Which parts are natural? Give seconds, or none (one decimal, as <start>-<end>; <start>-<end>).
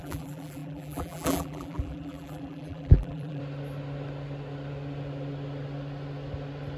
3.4-6.8